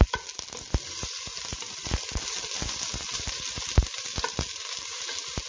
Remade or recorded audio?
recorded